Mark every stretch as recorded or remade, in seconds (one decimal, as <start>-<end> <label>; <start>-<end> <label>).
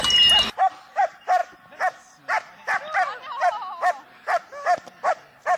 0.0-5.6 recorded